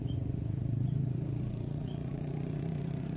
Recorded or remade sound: remade